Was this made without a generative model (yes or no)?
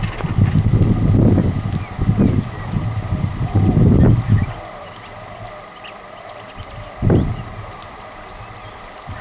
yes